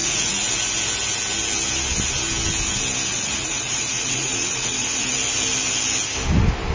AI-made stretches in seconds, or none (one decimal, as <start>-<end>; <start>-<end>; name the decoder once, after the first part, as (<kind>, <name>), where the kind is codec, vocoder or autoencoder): 0.0-0.5 (vocoder, Vocos); 3.1-5.1